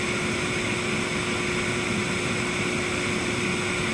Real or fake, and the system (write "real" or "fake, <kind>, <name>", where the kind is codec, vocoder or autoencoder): real